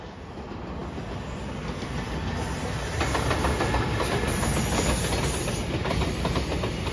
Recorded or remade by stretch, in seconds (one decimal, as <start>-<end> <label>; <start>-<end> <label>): 0.0-6.9 recorded